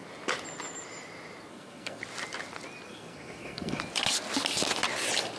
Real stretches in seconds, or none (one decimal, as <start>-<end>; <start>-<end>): 0.0-1.5; 2.0-2.9; 3.8-5.4